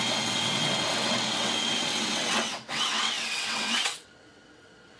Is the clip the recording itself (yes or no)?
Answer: no